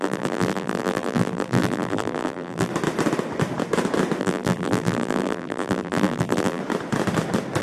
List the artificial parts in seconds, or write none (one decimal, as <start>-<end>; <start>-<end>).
0.0-2.7; 4.2-6.6